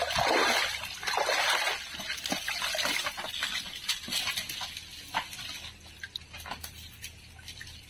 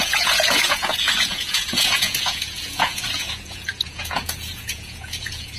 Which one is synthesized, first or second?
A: second